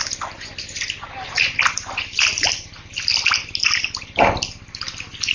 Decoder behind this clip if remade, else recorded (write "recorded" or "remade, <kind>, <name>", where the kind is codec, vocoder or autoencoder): recorded